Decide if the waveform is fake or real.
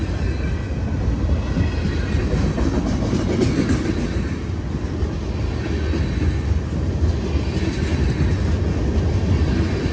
real